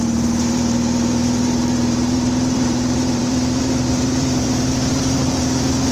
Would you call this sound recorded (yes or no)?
no